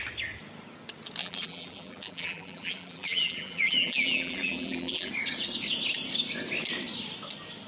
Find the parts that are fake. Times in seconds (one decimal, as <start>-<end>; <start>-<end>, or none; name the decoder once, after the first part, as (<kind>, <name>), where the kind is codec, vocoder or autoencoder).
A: 1.2-5.1 (vocoder, BigVGAN v2)